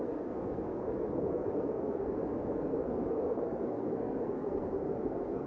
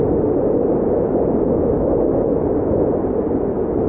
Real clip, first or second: second